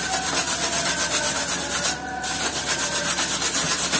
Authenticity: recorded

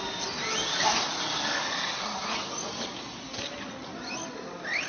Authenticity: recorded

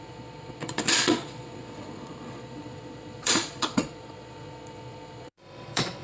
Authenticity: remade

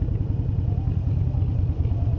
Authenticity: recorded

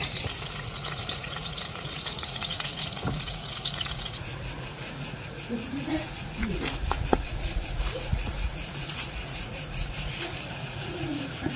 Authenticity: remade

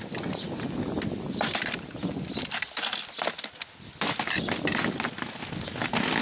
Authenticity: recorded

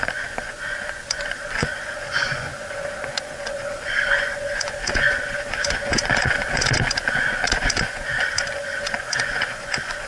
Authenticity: remade